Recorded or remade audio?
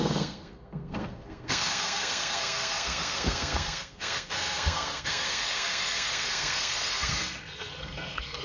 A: remade